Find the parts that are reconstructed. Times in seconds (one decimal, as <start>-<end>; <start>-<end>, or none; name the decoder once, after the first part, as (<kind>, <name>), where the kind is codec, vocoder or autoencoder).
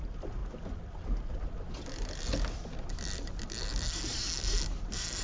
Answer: none